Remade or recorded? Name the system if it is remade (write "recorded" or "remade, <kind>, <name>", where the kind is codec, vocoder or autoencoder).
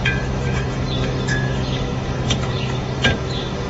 remade, autoencoder, DAC-VAE